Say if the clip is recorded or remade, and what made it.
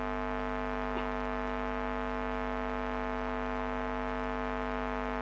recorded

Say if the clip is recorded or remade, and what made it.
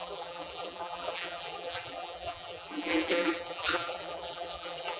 remade, vocoder, BigVGAN v2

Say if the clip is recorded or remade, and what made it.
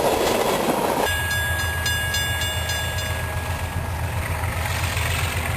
recorded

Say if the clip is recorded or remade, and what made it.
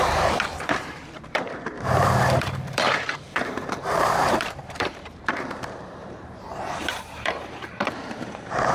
remade, vocoder, BigVGAN v2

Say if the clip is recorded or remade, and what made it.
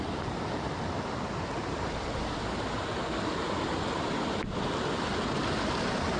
recorded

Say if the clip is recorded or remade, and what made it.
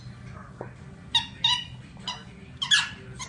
recorded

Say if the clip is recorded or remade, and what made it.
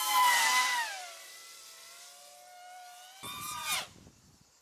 recorded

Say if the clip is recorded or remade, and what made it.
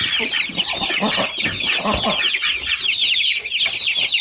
remade, vocoder, BigVGAN v2